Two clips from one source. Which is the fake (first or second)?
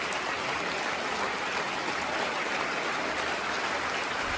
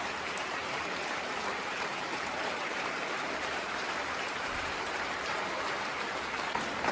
second